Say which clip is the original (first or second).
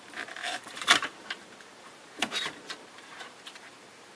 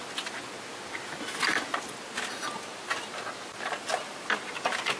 second